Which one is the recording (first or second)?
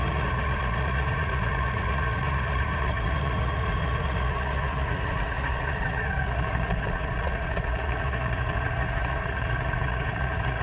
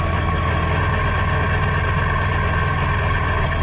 second